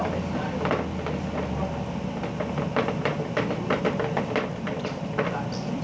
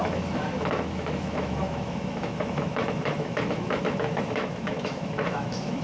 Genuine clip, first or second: first